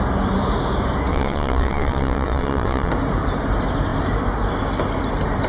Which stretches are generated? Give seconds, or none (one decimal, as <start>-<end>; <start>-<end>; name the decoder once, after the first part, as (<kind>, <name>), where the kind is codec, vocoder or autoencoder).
1.1-2.9 (vocoder, WaveNeXt)